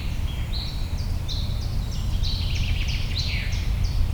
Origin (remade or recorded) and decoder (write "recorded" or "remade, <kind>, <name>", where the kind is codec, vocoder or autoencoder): remade, vocoder, BigVGAN v2